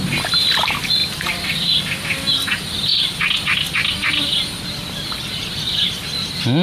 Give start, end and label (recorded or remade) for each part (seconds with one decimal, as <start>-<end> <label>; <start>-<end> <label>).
0.0-1.0 recorded; 1.0-1.8 remade; 1.8-6.6 recorded